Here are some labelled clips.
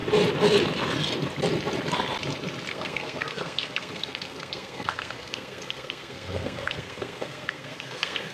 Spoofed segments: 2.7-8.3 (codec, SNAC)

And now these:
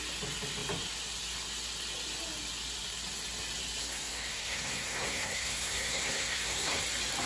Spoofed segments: 3.8-6.8 (codec, SNAC)

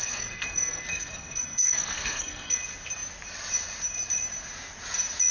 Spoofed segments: 0.0-2.6 (codec, SNAC)

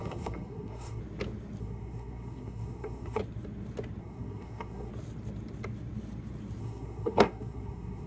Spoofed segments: 0.0-1.0 (codec, SNAC); 1.6-3.2; 4.0-4.9; 6.6-8.1

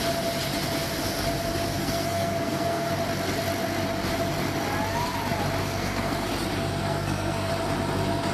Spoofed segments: 1.8-2.9 (codec, SNAC); 5.6-6.3; 6.8-7.5